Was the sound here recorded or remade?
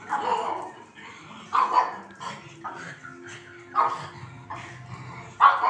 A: recorded